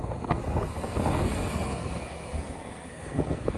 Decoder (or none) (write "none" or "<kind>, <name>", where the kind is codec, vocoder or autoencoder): codec, SNAC